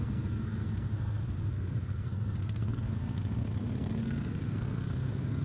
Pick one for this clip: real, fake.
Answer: fake